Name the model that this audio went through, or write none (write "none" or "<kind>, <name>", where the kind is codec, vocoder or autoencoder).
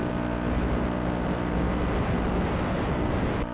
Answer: none